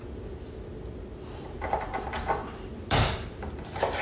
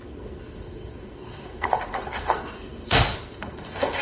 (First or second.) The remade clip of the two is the second